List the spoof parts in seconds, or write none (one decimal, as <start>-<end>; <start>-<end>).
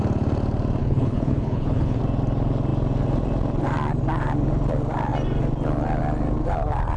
0.8-2.0